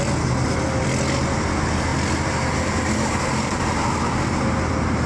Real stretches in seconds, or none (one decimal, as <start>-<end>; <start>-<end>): 0.0-5.1